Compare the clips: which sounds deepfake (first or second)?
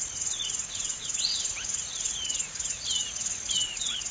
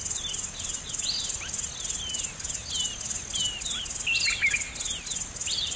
first